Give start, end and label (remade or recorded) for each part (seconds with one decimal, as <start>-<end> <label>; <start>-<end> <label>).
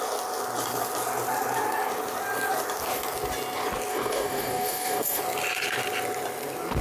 0.0-3.9 recorded; 3.9-5.2 remade; 5.2-6.8 recorded